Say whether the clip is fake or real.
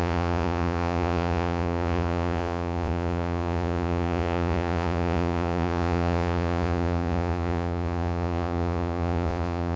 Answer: fake